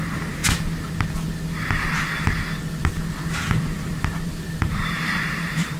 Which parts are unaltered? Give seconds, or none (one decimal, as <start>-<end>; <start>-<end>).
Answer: 0.4-3.9